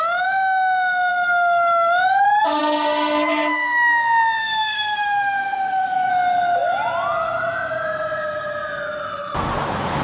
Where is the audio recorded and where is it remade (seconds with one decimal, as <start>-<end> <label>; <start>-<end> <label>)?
0.0-4.4 recorded; 4.4-6.1 remade; 6.1-10.0 recorded